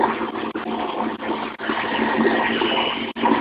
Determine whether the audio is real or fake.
real